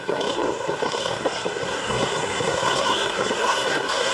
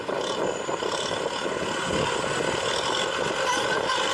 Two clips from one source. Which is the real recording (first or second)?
second